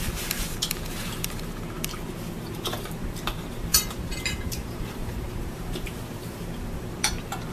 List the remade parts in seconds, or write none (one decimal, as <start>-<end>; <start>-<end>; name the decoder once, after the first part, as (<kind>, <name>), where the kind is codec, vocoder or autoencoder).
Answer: 0.0-7.5 (vocoder, BigVGAN v2)